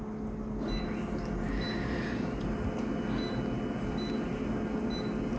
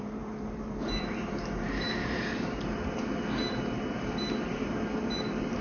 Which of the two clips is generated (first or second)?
second